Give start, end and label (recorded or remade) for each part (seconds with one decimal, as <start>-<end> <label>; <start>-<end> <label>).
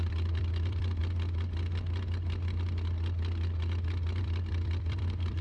0.0-1.0 remade; 1.0-4.2 recorded; 4.2-5.4 remade